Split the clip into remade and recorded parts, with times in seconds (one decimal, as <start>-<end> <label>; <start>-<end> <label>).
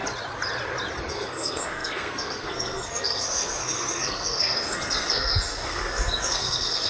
0.0-1.1 recorded; 1.1-6.9 remade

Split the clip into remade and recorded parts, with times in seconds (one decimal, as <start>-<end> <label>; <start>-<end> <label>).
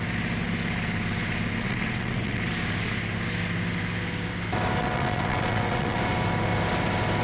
0.0-1.6 recorded; 1.6-2.5 remade; 2.5-4.8 recorded; 4.8-6.0 remade; 6.0-7.2 recorded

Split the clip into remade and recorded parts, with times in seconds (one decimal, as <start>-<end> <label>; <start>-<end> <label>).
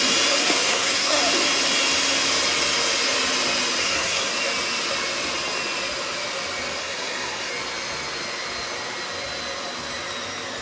0.0-0.4 recorded; 0.4-1.2 remade; 1.2-3.8 recorded; 3.8-4.3 remade; 4.3-6.8 recorded; 6.8-7.5 remade; 7.5-10.6 recorded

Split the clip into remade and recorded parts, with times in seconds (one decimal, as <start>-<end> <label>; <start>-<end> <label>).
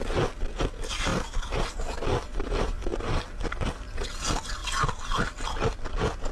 0.0-1.1 recorded; 1.1-1.8 remade; 1.8-6.3 recorded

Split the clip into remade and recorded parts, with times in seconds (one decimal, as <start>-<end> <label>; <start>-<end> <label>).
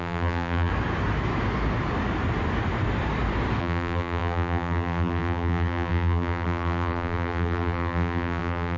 0.0-0.7 remade; 0.7-3.6 recorded; 3.6-8.8 remade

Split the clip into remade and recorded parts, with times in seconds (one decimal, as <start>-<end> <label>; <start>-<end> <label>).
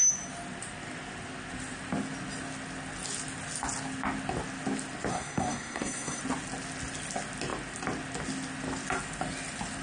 0.0-5.1 recorded; 5.1-6.2 remade; 6.2-9.8 recorded